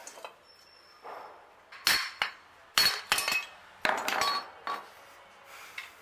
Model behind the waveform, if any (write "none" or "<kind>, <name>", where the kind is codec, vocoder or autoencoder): none